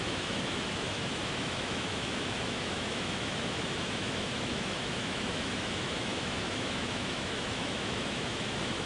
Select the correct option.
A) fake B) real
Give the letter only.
A